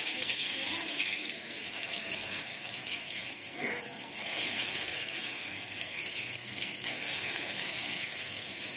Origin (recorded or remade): remade